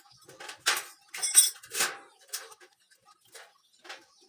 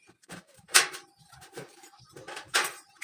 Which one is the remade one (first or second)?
second